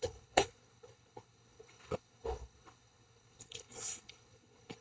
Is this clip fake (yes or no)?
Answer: yes